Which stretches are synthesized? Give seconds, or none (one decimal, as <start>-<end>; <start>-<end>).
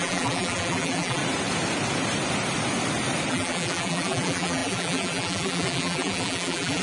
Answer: 0.0-1.2; 3.3-6.8